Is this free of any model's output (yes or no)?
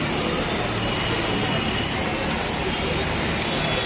yes